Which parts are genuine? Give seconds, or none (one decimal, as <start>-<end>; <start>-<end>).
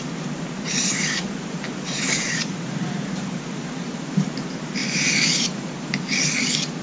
0.0-0.8; 3.8-4.8; 5.7-6.8